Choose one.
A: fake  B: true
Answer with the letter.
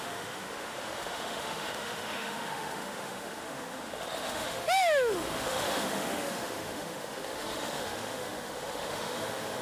A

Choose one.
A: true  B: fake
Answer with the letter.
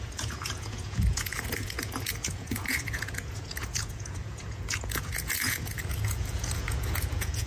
B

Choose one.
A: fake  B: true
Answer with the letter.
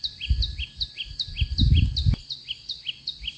B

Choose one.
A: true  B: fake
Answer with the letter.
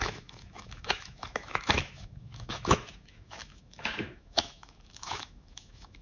B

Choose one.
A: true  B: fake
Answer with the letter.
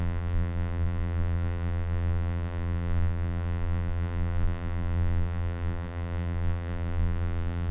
B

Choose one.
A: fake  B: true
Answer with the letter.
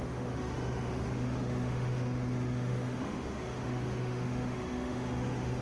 A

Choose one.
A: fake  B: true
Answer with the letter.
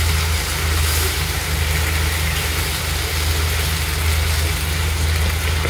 B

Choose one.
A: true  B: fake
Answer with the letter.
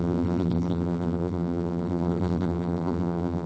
B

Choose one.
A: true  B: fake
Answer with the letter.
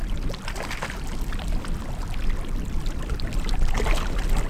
A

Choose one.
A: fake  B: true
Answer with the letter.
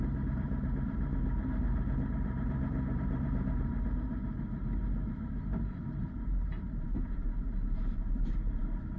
A